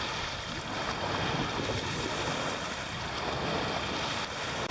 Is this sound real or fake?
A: real